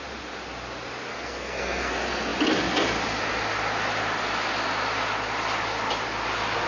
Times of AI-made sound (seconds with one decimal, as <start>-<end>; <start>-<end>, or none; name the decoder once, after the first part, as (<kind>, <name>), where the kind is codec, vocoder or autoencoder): 1.1-1.9 (codec, SNAC)